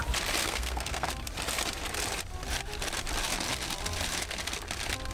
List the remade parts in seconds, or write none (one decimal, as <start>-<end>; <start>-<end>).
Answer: 0.4-1.1